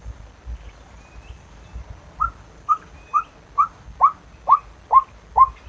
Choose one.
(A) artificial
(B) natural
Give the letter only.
B